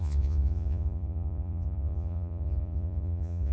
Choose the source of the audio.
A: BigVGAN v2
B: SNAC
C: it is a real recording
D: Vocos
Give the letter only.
D